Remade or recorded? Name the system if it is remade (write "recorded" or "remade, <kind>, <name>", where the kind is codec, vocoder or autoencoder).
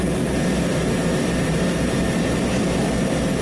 recorded